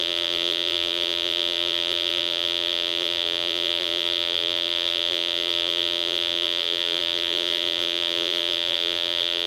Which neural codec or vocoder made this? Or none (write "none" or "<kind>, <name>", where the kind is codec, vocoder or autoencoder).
vocoder, BigVGAN v2